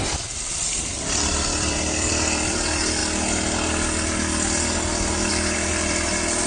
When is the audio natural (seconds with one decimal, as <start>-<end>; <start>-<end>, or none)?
3.0-5.3